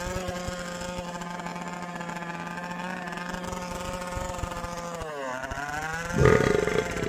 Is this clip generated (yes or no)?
no